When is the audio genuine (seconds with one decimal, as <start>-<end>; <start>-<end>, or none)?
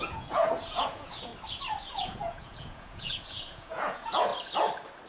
1.3-1.9; 4.3-5.1